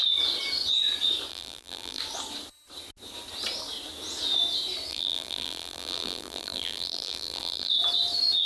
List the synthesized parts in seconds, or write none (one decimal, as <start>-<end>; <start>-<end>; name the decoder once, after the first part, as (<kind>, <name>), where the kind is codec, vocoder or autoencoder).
1.3-2.0 (vocoder, BigVGAN v2); 4.9-7.7